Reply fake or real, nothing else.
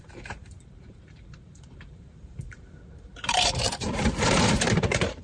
fake